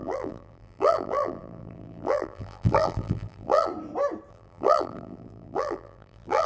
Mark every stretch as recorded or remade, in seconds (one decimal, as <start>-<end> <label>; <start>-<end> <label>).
0.0-3.7 remade; 3.7-4.3 recorded; 4.3-6.5 remade